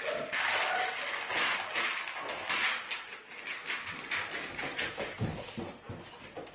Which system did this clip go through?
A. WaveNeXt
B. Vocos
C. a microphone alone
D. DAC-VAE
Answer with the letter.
C